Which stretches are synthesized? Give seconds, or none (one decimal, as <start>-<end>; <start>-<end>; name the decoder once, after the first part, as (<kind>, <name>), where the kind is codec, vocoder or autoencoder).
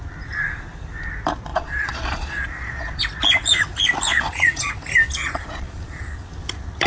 1.5-3.0 (vocoder, Vocos); 4.1-4.7; 5.2-6.0